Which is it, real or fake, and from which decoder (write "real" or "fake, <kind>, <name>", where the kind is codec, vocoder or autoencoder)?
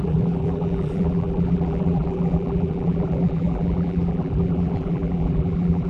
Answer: fake, vocoder, BigVGAN v2